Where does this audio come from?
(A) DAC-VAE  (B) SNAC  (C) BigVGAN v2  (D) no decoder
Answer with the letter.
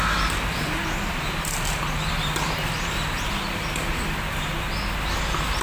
D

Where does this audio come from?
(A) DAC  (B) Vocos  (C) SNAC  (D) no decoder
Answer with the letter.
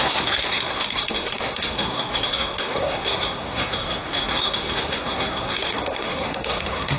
C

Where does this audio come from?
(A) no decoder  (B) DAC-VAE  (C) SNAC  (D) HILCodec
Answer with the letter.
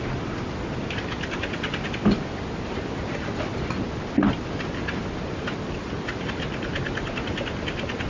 A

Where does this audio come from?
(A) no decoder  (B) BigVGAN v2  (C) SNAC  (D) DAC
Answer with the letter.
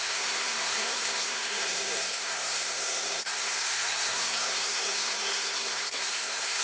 C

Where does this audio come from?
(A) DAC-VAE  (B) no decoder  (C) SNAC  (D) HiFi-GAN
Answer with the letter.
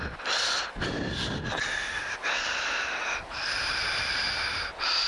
B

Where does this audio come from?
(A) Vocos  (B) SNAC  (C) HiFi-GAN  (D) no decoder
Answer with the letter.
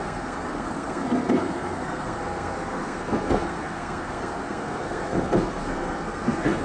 B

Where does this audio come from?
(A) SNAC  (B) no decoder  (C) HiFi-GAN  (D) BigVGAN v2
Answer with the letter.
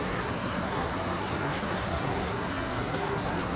A